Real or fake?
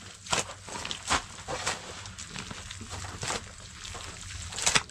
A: real